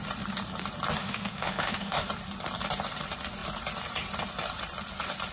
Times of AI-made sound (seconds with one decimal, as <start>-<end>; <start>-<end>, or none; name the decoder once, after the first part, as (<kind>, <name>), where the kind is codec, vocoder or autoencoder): 1.0-2.0 (autoencoder, DAC-VAE)